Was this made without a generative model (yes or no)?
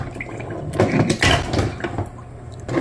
yes